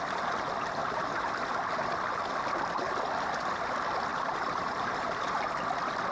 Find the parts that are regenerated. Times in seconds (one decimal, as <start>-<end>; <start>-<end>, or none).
0.8-1.3; 4.1-5.5